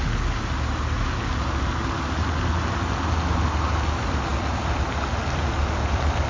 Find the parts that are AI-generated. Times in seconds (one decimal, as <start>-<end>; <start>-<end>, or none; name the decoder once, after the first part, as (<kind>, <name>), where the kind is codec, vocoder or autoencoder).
none

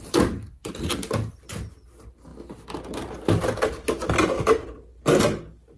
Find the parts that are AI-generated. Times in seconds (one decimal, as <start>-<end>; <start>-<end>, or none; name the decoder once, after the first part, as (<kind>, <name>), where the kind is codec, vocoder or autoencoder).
none

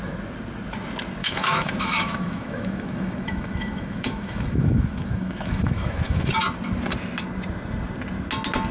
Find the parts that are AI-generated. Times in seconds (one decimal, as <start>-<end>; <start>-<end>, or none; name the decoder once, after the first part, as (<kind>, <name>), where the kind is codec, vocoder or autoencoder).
1.2-6.3 (autoencoder, DAC-VAE)

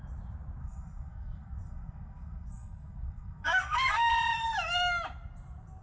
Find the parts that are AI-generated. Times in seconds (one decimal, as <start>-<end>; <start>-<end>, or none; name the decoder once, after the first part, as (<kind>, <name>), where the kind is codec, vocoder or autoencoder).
0.6-4.1 (codec, SNAC)

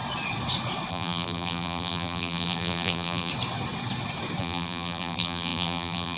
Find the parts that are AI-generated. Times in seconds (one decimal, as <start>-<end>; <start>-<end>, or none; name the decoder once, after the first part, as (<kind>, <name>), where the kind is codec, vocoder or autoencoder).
0.9-3.3 (vocoder, BigVGAN v2); 4.4-6.2

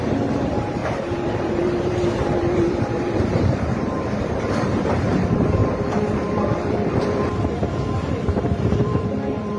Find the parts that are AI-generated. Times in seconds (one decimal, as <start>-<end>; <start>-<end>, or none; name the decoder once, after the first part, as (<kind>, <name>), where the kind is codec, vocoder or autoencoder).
0.0-9.6 (vocoder, BigVGAN v2)

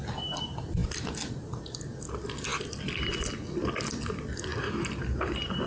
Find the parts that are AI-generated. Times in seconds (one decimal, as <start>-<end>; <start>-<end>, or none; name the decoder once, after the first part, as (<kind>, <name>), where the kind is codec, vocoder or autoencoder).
none

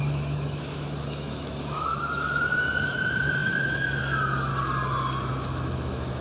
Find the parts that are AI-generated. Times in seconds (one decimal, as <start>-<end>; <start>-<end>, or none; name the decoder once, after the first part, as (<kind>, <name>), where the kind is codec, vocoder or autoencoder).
0.0-4.5 (autoencoder, DAC-VAE); 5.3-6.2